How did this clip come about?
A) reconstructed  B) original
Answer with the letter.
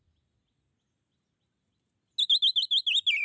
B